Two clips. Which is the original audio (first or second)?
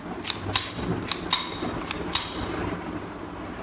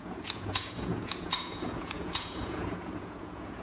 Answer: first